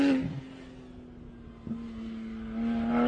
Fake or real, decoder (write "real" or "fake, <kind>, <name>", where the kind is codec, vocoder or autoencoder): real